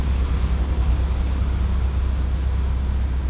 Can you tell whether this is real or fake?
real